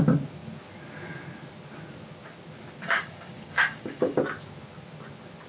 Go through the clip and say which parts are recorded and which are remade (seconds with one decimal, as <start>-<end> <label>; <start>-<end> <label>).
0.0-2.8 recorded; 2.8-4.2 remade; 4.2-5.5 recorded